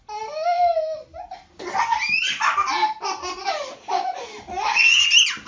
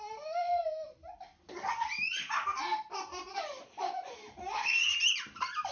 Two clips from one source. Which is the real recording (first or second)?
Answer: first